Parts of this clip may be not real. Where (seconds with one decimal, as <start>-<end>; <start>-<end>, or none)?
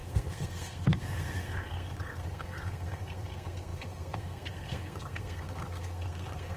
0.0-6.6